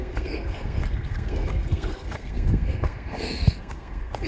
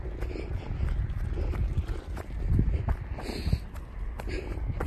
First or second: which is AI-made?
first